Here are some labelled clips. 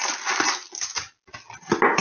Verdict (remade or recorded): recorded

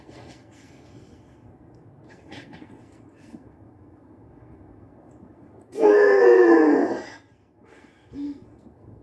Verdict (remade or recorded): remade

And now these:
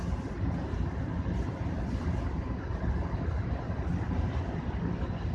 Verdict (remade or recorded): recorded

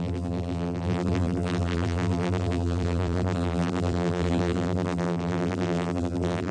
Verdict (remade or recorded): remade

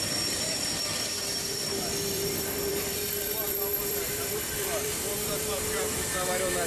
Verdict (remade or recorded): remade